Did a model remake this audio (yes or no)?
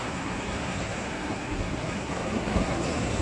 yes